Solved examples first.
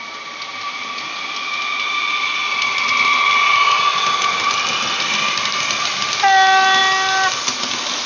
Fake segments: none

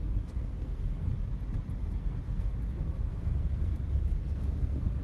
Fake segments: 0.0-1.1 (codec, SNAC); 1.8-5.0

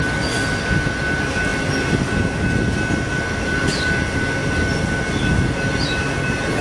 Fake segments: none

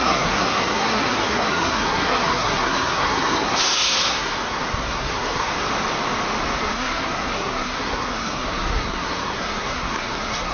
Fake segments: 0.0-5.5 (codec, SNAC); 6.6-10.5

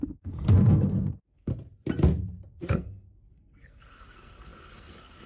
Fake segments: 0.0-1.5 (codec, SNAC); 2.5-5.3

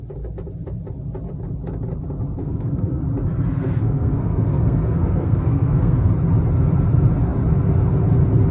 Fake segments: 2.4-3.0 (codec, SNAC); 3.5-6.1